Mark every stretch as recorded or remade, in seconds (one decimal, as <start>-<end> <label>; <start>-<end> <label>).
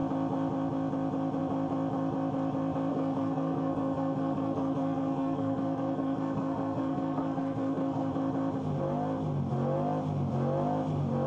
0.0-2.9 recorded; 2.9-8.1 remade; 8.1-11.3 recorded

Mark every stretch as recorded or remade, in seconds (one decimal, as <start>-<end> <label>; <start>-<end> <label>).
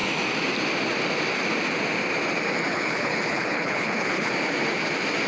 0.0-2.7 recorded; 2.7-4.3 remade; 4.3-5.3 recorded